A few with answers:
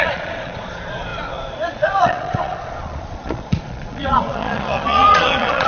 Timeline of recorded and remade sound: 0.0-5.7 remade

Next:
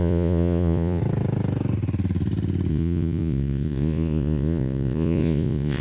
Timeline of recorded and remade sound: 0.0-1.0 remade; 1.0-2.7 recorded; 2.7-5.8 remade

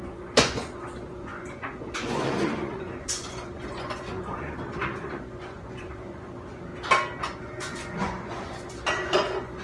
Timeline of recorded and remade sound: 0.0-6.7 remade; 6.7-7.2 recorded; 7.2-9.6 remade

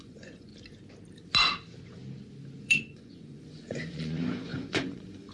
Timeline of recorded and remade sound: 0.0-0.5 remade; 0.5-2.6 recorded; 2.6-5.3 remade

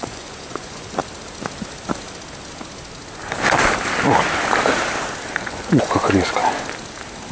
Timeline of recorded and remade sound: 0.0-1.0 remade; 1.0-5.4 recorded; 5.4-6.4 remade; 6.4-7.3 recorded